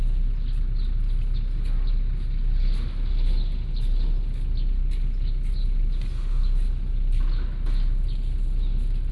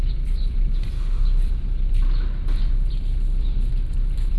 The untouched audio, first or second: first